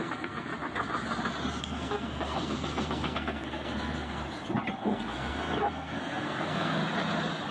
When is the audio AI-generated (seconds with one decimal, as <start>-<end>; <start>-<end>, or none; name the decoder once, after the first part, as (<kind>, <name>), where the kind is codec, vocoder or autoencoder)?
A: 0.0-0.5 (codec, SNAC); 1.6-4.2; 4.8-6.8